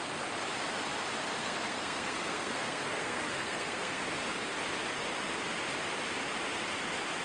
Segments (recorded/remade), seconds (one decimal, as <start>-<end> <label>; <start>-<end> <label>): 0.0-1.4 recorded; 1.4-4.0 remade; 4.0-7.2 recorded